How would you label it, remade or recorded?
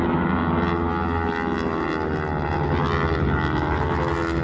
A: recorded